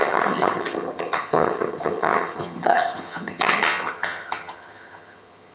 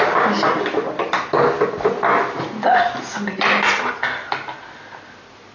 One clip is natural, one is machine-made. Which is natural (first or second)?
second